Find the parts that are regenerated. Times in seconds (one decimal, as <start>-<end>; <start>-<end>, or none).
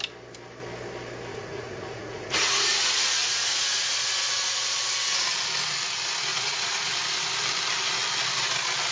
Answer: 1.3-4.8; 6.3-6.9